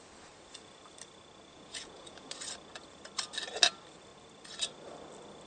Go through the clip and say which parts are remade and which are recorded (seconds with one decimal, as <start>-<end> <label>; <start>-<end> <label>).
0.0-1.5 recorded; 1.5-2.3 remade; 2.3-5.5 recorded